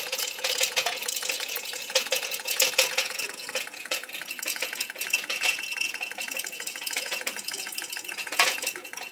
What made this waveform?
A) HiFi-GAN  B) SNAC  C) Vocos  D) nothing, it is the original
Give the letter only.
C